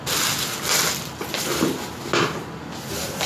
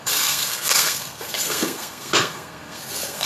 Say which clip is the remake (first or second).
second